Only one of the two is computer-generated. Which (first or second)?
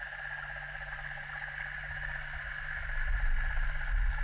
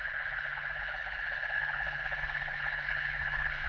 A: second